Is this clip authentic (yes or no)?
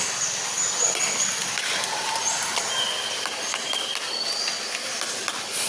yes